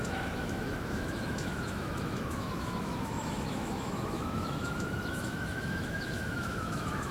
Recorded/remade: remade